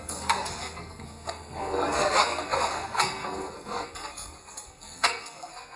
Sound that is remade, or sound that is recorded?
remade